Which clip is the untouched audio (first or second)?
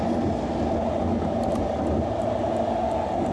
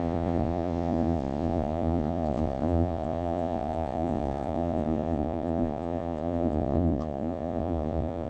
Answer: first